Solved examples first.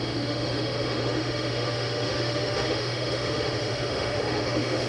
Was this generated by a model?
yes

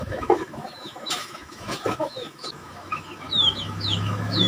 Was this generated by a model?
yes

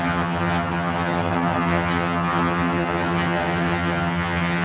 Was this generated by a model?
yes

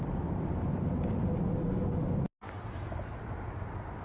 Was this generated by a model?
no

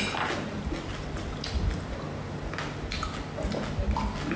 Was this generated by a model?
no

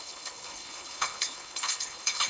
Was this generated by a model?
yes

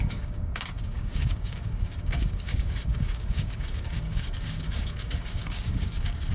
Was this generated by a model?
yes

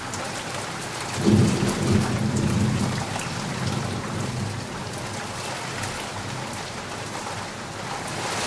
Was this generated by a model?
no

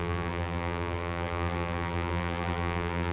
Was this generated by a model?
yes